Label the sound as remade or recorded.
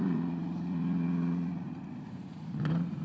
remade